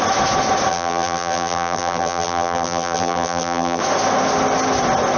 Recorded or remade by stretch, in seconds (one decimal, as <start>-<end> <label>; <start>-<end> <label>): 0.0-0.7 recorded; 0.7-3.8 remade; 3.8-5.2 recorded